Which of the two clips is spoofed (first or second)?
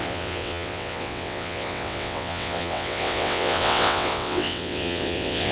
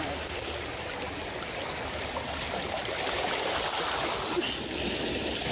first